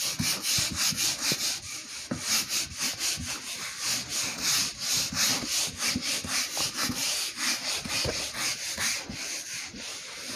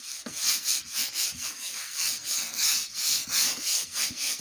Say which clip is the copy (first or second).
second